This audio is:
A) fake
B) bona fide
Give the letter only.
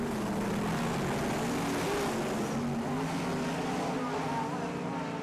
B